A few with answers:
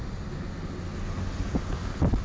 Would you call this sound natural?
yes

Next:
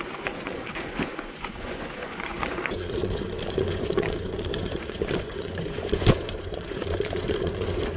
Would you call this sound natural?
no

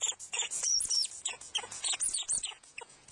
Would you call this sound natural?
no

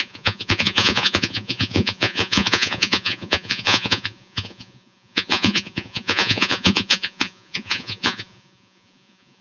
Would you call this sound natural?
no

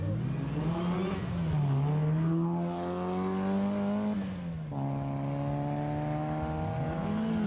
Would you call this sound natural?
yes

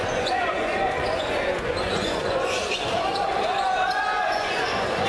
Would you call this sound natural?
no